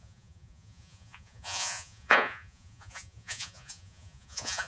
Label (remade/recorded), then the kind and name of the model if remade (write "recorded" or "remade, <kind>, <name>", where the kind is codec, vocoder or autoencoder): remade, vocoder, Vocos